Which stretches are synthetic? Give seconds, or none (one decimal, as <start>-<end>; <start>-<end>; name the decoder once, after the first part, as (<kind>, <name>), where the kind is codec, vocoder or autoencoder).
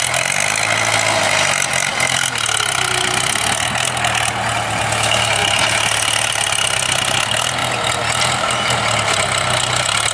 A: none